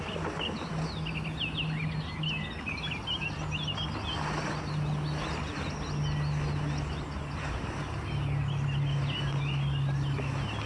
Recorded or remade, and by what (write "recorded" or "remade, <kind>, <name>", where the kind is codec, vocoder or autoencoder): recorded